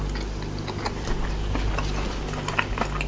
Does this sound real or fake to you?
real